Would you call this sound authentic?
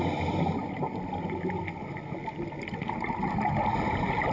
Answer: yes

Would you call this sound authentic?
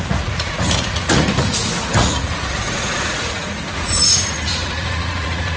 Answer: no